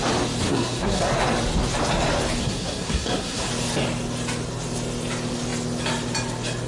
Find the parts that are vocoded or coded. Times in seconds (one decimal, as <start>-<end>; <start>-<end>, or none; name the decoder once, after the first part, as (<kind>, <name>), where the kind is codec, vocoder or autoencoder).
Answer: 0.5-1.1 (codec, SNAC); 2.4-3.5